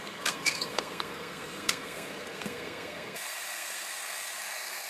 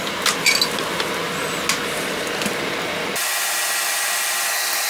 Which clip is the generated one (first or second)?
first